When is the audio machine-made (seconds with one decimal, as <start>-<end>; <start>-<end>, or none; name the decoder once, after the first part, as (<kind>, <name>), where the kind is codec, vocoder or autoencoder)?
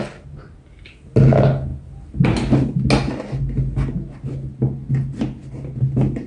none